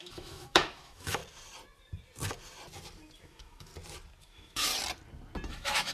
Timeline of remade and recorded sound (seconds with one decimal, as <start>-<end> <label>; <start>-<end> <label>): 0.0-1.2 remade; 1.2-3.2 recorded; 3.2-3.7 remade; 3.7-4.2 recorded; 4.2-4.7 remade; 4.7-5.5 recorded; 5.5-5.9 remade